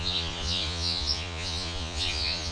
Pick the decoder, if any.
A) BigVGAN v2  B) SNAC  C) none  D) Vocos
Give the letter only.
D